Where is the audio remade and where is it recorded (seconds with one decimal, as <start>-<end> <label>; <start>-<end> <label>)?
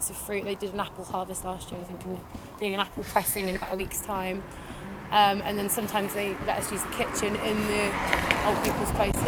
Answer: 0.0-1.8 recorded; 1.8-3.8 remade; 3.8-9.3 recorded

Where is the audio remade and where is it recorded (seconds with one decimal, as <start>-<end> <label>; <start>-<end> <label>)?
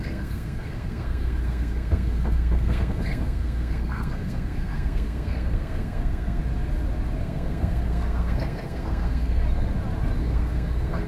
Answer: 0.0-6.4 remade; 6.4-7.2 recorded; 7.2-9.4 remade; 9.4-10.2 recorded; 10.2-11.1 remade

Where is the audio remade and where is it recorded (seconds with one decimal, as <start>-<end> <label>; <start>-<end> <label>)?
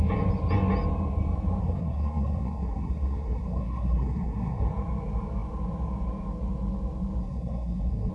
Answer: 0.0-1.6 recorded; 1.6-4.7 remade; 4.7-7.2 recorded; 7.2-8.1 remade